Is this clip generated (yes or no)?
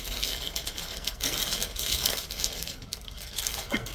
yes